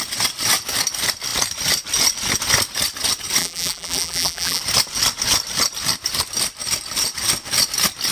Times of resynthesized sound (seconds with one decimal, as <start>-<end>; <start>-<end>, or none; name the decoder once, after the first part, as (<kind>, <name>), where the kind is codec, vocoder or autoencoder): 3.4-4.6 (vocoder, BigVGAN v2)

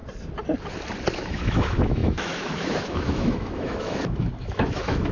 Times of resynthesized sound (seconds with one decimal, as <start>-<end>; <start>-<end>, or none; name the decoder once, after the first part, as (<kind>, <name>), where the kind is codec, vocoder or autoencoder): 1.1-5.1 (autoencoder, DAC-VAE)

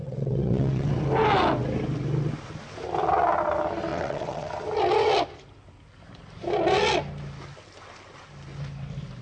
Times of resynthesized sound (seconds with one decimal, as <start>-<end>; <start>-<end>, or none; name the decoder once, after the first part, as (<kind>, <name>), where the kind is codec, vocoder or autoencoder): 0.0-0.9 (vocoder, WaveNeXt); 3.9-4.5

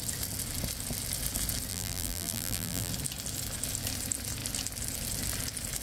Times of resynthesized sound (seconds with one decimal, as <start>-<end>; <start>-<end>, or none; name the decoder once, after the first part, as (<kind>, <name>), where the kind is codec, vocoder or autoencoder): 1.7-2.9 (vocoder, BigVGAN v2)

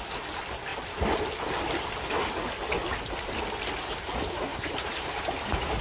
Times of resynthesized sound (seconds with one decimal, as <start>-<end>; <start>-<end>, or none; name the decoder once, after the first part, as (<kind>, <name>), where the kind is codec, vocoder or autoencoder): 4.5-5.1 (vocoder, BigVGAN v2)